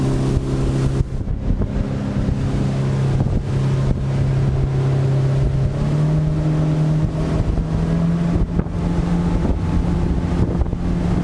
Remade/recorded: recorded